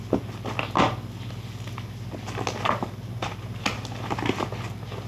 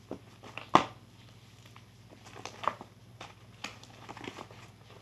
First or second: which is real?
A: first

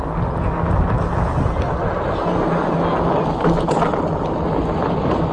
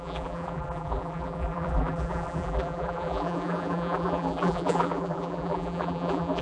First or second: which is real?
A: first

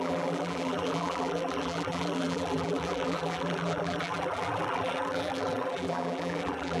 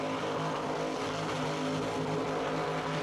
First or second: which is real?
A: second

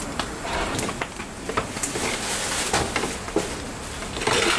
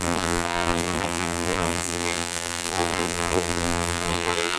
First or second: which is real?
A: first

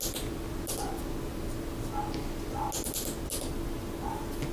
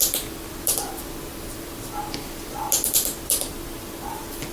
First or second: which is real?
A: first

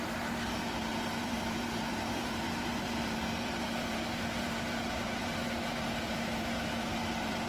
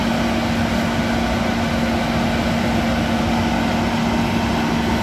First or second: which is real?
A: second